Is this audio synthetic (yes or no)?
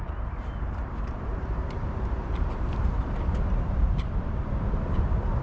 yes